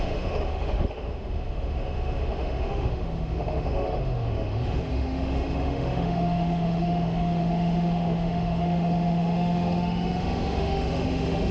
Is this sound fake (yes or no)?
yes